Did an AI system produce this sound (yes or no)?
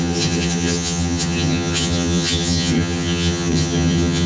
yes